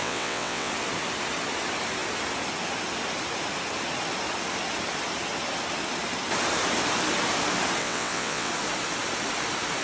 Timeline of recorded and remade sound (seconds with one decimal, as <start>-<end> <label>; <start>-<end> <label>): 0.0-0.7 remade; 0.7-7.8 recorded; 7.8-8.5 remade; 8.5-9.8 recorded